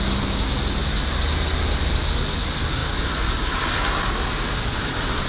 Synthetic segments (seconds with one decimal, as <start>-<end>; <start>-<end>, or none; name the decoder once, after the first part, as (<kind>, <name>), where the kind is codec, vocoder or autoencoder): none